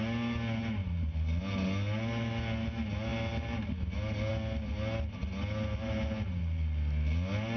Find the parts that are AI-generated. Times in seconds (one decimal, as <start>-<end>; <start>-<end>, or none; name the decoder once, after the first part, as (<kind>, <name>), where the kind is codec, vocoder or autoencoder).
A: none